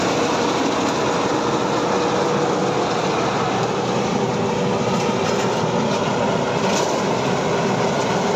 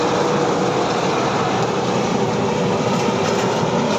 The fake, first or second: second